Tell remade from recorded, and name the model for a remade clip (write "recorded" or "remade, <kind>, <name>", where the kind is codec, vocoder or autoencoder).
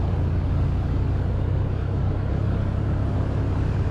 remade, codec, DAC